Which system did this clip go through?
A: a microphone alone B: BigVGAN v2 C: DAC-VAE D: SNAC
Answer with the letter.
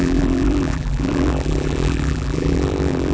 B